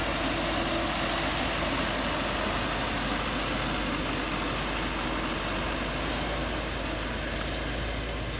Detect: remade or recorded recorded